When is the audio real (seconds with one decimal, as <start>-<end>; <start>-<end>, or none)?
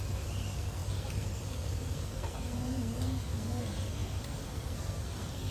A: none